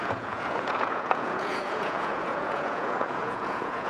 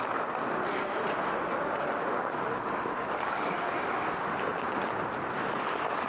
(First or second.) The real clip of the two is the second